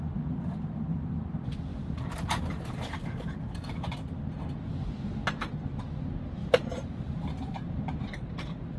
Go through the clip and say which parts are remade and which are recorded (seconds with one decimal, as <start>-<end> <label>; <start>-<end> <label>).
0.0-6.4 recorded; 6.4-7.3 remade; 7.3-8.8 recorded